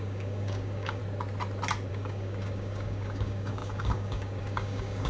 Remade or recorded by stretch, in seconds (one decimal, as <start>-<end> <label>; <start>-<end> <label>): 0.0-1.0 remade; 1.0-1.9 recorded; 1.9-5.1 remade